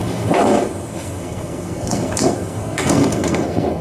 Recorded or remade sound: remade